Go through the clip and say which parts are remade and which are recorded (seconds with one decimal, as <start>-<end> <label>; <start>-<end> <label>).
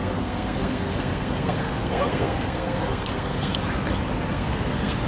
0.0-3.5 remade; 3.5-4.3 recorded; 4.3-5.1 remade